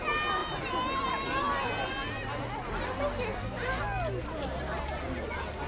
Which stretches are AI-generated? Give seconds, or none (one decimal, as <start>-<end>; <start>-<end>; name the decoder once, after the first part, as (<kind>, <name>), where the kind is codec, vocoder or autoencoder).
none